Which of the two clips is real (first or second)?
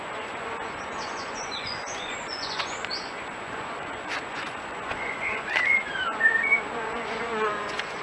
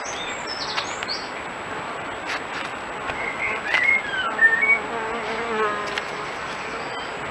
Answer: second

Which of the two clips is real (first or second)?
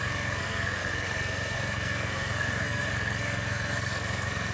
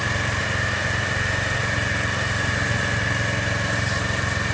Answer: second